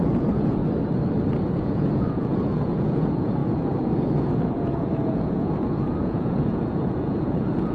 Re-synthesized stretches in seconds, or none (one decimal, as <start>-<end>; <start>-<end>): 0.0-0.6; 1.6-7.7